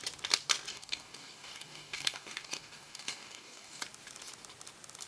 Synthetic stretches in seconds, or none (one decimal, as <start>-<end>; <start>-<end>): 0.7-3.8